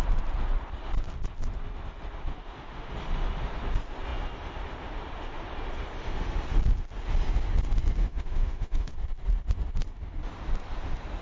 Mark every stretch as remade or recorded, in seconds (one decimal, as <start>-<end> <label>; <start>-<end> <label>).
0.0-2.3 recorded; 2.3-2.9 remade; 2.9-8.0 recorded; 8.0-8.9 remade; 8.9-11.2 recorded